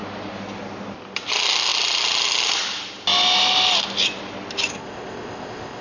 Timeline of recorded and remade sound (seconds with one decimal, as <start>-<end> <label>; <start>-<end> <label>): 0.0-4.7 recorded; 4.7-5.8 remade